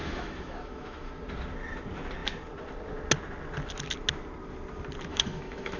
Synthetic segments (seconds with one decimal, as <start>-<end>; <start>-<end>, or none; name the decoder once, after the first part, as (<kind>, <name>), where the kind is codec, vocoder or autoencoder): 0.0-1.1 (autoencoder, DAC-VAE); 5.1-5.8